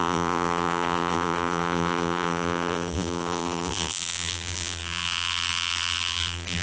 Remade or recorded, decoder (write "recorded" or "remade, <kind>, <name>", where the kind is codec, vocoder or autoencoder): remade, vocoder, BigVGAN v2